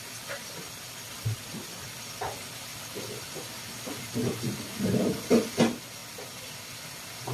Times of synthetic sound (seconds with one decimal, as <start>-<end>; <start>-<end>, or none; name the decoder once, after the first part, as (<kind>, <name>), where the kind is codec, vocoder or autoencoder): 2.7-3.4 (vocoder, BigVGAN v2); 4.2-5.2